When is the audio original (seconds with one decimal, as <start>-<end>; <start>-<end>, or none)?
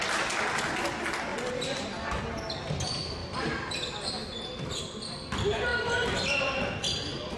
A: 0.0-7.4